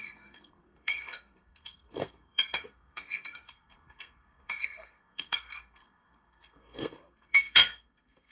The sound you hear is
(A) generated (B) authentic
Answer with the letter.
A